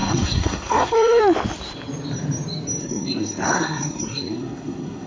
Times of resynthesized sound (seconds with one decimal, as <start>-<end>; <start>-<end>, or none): 0.0-1.2; 2.8-5.1